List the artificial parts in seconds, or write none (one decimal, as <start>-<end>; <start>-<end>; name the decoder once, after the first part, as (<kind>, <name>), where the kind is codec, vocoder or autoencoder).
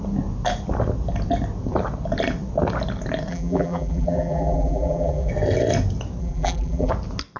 3.3-5.3 (vocoder, BigVGAN v2); 6.2-6.9